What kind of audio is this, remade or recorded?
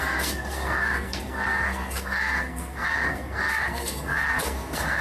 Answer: remade